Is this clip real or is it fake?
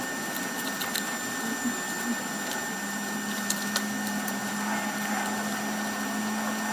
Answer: real